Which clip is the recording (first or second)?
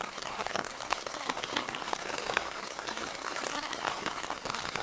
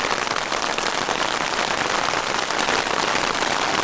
second